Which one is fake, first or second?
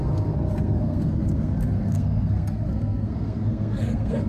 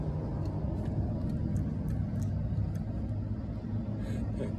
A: first